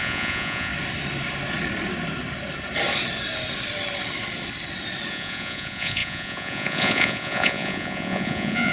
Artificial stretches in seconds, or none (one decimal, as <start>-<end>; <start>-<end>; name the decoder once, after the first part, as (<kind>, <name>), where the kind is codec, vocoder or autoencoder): 0.0-0.7 (vocoder, Vocos); 5.1-8.7